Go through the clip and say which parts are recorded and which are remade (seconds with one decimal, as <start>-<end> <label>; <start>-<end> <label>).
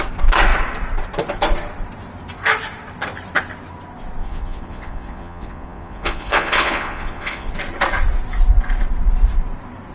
0.0-4.2 recorded; 4.2-7.5 remade; 7.5-9.9 recorded